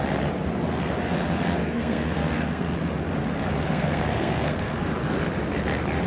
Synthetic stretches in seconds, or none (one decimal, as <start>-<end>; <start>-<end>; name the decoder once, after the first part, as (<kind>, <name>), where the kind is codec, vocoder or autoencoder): 1.6-2.7 (codec, SNAC); 3.7-4.9